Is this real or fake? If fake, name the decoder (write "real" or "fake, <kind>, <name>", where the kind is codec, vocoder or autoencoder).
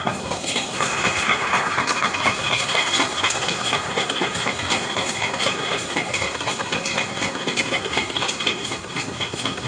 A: fake, codec, SNAC